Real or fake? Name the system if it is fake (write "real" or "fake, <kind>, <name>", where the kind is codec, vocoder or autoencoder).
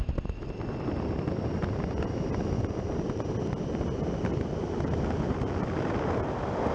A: real